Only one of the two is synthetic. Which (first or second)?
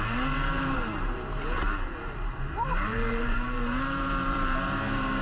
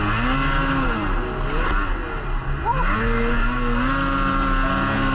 first